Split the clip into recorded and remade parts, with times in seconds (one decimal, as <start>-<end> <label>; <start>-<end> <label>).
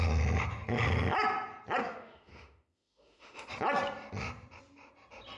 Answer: 0.0-1.8 recorded; 1.8-3.5 remade; 3.5-5.4 recorded